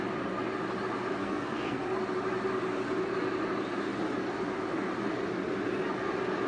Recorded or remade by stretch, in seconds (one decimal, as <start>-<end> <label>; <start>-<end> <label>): 0.0-1.2 recorded; 1.2-1.8 remade; 1.8-6.5 recorded